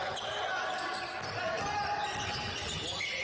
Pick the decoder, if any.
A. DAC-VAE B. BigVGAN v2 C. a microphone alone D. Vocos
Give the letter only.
C